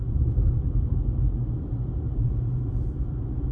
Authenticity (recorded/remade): remade